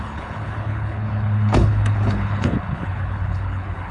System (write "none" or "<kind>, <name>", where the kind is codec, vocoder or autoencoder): codec, HILCodec